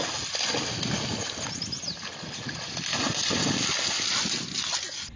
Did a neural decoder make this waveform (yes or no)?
yes